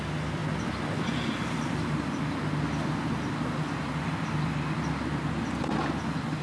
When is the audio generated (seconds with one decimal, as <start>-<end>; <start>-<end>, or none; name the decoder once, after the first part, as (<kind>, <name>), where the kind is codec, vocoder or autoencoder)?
none